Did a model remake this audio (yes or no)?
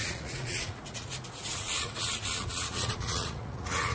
yes